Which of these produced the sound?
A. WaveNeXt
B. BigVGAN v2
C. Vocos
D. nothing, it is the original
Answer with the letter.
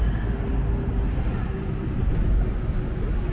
D